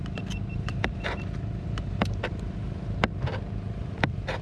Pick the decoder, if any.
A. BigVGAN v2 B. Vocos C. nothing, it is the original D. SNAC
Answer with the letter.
C